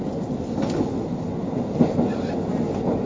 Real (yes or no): yes